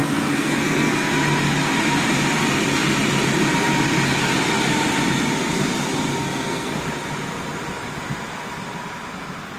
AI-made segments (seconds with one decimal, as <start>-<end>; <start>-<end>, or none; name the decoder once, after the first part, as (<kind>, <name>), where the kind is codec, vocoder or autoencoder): 0.0-1.1 (codec, SNAC); 6.2-6.8